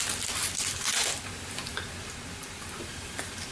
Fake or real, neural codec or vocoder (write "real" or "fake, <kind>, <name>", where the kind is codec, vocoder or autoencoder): real